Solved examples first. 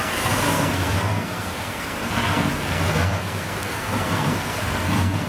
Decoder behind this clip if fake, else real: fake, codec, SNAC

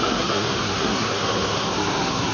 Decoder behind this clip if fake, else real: fake, codec, SNAC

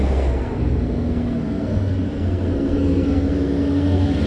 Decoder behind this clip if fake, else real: fake, codec, SNAC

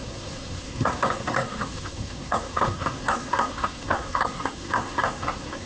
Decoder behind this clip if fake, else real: fake, codec, SNAC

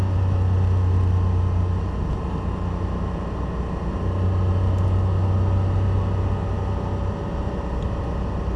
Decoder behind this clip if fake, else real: real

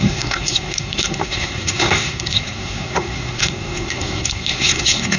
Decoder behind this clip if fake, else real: fake, codec, SNAC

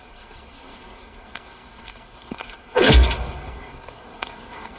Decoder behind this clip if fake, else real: fake, codec, SNAC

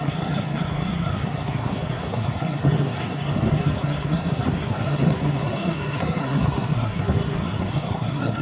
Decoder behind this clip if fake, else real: fake, codec, SNAC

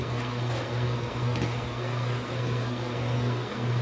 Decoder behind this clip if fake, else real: fake, codec, SNAC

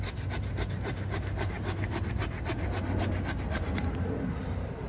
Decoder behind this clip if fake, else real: real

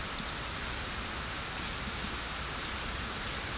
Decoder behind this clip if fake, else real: real